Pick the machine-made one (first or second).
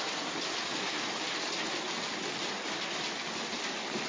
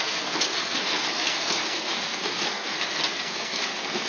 second